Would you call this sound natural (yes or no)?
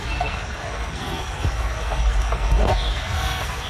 no